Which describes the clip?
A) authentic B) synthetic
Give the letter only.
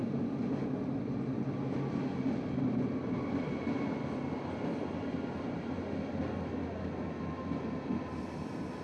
A